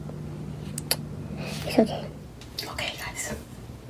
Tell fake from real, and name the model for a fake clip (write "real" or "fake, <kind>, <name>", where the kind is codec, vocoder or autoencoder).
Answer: real